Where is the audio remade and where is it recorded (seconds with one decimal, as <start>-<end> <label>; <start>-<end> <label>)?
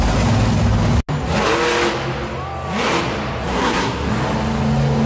0.0-3.5 recorded; 3.5-4.1 remade; 4.1-5.1 recorded